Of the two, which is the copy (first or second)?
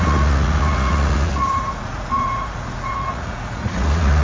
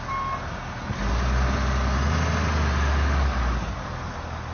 first